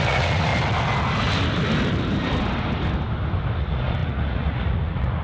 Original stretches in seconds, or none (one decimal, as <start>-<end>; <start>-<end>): 0.5-3.6